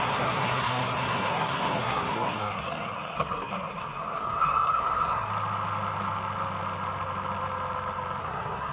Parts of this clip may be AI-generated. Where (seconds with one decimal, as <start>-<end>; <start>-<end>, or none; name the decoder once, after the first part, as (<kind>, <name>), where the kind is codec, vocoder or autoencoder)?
0.0-5.3 (codec, SNAC); 8.2-8.7